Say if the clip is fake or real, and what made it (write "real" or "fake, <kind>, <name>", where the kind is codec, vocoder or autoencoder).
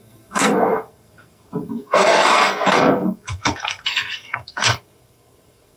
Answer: fake, codec, SNAC